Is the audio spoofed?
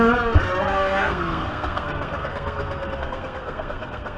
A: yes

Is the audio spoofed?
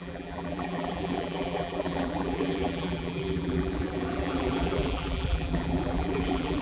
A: yes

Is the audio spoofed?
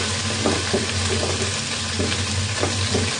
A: no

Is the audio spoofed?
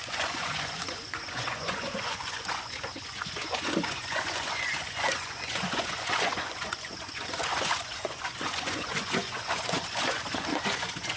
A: yes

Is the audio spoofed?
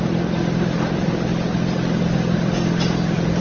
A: no